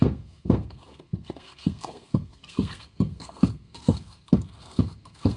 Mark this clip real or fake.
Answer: fake